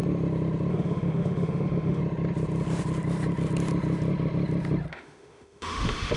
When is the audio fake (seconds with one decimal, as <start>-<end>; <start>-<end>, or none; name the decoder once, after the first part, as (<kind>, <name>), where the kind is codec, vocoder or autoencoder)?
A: 0.7-2.0 (autoencoder, DAC-VAE); 4.9-6.2